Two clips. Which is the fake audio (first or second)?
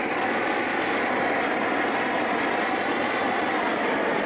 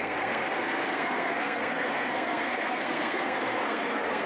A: second